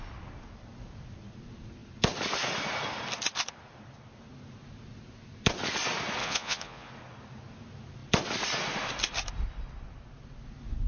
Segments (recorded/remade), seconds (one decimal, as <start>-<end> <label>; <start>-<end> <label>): 0.0-6.2 recorded; 6.2-6.9 remade; 6.9-10.9 recorded